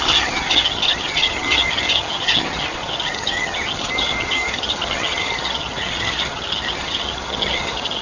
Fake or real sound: fake